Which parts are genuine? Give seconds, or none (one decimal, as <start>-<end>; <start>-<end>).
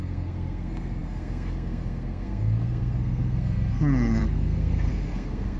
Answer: none